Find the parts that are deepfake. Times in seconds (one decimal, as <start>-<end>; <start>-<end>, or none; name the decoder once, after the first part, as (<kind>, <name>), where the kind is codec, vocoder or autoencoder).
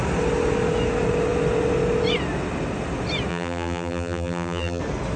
3.3-4.8 (vocoder, BigVGAN v2)